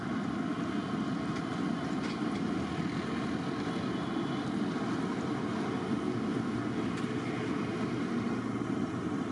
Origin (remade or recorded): recorded